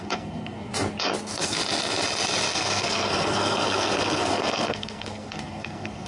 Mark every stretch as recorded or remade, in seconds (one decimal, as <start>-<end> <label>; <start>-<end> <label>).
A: 0.0-0.7 remade; 0.7-1.2 recorded; 1.2-1.6 remade; 1.6-2.5 recorded; 2.5-6.1 remade